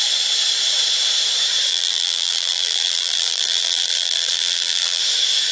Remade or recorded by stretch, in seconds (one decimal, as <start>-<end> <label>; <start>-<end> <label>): 0.0-1.7 recorded; 1.7-5.0 remade; 5.0-5.5 recorded